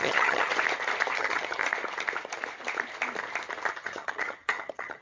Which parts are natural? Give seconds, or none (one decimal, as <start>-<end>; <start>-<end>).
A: 0.5-1.2; 1.6-3.7